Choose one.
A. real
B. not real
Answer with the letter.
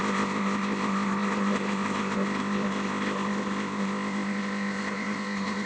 B